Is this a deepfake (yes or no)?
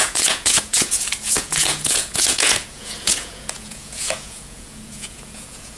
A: yes